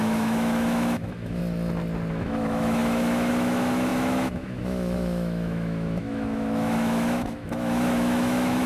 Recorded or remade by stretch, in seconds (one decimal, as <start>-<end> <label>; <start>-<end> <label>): 0.0-1.4 remade; 1.4-2.1 recorded; 2.1-8.7 remade